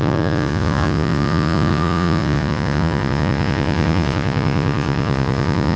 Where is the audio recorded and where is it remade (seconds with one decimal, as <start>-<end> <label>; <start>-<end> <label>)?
0.0-5.8 remade